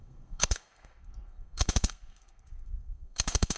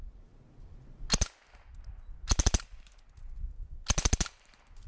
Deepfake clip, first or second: first